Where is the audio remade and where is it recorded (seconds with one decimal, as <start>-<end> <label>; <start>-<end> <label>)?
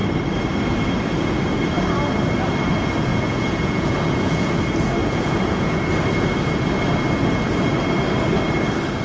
0.0-3.1 recorded; 3.1-4.6 remade; 4.6-5.0 recorded; 5.0-5.8 remade; 5.8-9.0 recorded